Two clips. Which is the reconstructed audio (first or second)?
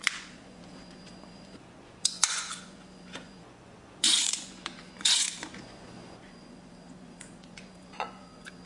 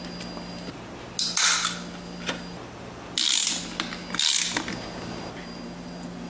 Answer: first